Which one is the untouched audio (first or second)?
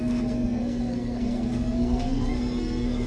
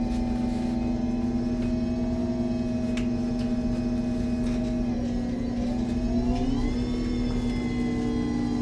second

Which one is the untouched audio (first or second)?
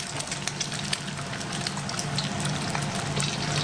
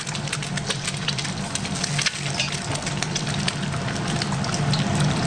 first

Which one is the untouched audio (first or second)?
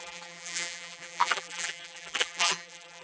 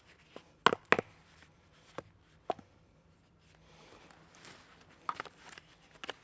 second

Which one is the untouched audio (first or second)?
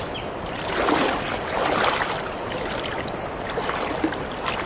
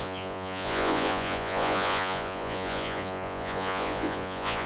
first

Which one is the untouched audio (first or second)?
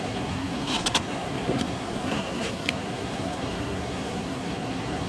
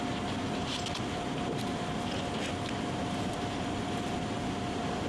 second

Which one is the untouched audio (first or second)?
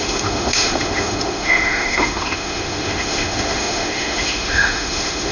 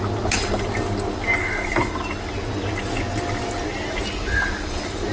second